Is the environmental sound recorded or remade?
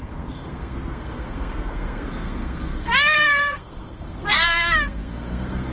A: remade